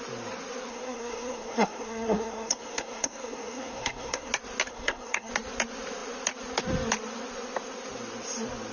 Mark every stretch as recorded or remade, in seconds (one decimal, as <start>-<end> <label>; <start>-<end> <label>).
0.0-0.7 recorded; 0.7-4.3 remade; 4.3-4.7 recorded; 4.7-5.3 remade; 5.3-8.7 recorded